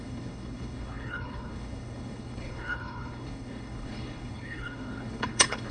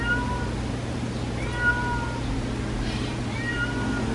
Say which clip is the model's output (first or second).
first